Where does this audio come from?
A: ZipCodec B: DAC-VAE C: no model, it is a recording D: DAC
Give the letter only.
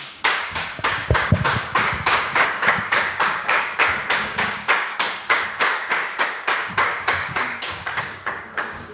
D